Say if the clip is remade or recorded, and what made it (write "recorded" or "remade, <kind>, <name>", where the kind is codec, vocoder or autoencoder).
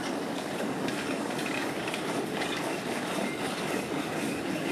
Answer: remade, codec, DAC